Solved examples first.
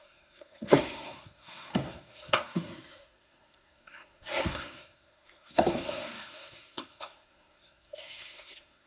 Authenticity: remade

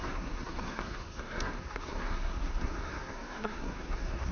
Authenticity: remade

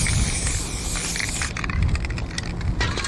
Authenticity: recorded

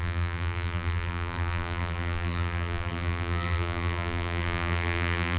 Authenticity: remade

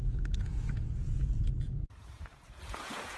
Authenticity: remade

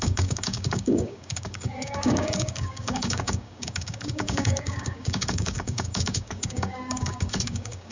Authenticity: remade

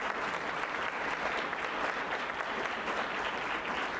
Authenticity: recorded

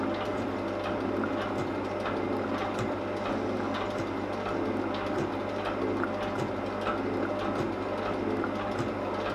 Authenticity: recorded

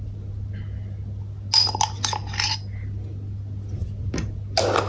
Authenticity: recorded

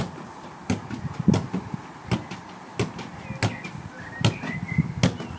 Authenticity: recorded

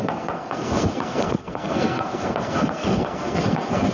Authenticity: remade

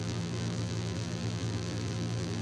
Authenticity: remade